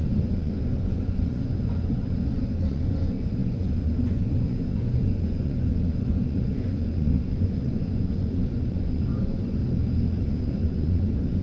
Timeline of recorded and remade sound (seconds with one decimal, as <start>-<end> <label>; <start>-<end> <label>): 0.0-9.6 remade; 9.6-10.2 recorded; 10.2-11.4 remade